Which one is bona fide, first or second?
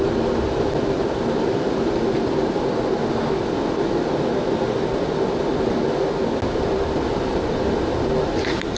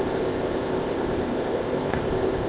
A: first